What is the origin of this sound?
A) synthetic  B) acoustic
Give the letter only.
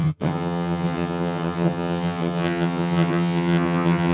A